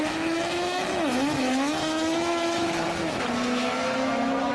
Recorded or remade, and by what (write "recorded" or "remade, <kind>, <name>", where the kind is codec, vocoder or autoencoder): remade, autoencoder, DAC-VAE